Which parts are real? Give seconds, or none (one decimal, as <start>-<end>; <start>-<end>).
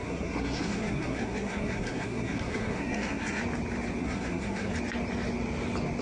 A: 3.4-4.0; 4.7-6.0